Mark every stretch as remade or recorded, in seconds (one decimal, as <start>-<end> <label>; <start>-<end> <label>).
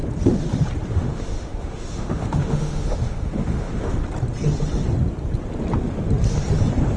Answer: 0.0-0.9 recorded; 0.9-4.0 remade; 4.0-7.0 recorded